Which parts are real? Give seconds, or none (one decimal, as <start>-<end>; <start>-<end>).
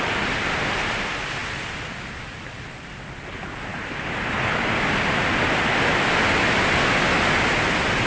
0.0-8.1